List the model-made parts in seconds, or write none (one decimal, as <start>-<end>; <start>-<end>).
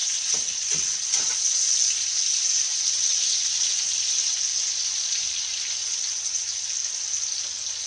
0.0-1.2; 2.7-4.0; 5.8-6.6